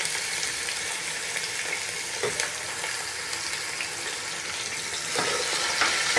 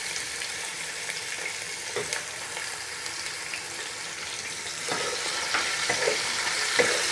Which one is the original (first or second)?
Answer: first